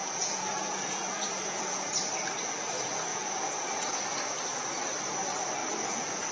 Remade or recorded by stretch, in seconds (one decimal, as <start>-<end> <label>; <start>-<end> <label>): 0.0-1.9 remade; 1.9-3.1 recorded; 3.1-4.0 remade; 4.0-5.6 recorded; 5.6-6.3 remade